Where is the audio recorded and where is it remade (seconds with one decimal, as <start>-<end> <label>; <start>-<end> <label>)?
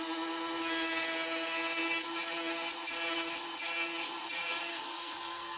0.0-4.7 recorded; 4.7-5.6 remade